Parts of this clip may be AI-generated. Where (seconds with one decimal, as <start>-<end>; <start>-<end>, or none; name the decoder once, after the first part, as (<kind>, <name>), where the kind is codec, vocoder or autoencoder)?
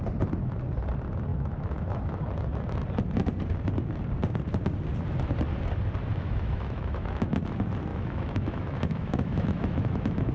1.3-2.2 (autoencoder, DAC-VAE); 6.1-7.4; 7.9-10.3